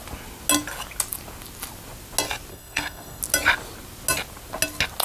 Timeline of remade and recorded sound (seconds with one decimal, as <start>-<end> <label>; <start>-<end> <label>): 0.0-2.5 recorded; 2.5-3.2 remade; 3.2-5.0 recorded